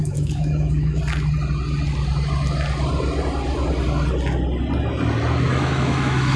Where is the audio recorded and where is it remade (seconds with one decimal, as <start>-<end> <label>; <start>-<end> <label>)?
0.0-1.0 remade; 1.0-5.5 recorded; 5.5-6.4 remade